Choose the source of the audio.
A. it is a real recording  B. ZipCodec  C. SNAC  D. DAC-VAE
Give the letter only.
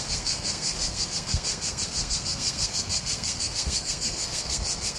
C